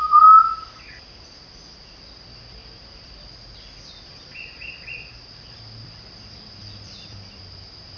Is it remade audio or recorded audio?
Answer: recorded